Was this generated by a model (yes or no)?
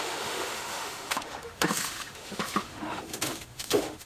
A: yes